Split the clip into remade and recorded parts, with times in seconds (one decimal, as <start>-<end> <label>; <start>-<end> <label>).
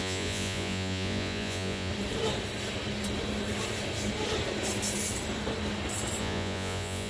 0.0-1.9 remade; 1.9-6.2 recorded; 6.2-7.1 remade